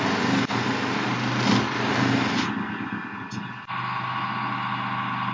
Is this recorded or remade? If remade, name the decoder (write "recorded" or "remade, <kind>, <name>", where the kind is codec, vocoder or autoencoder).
recorded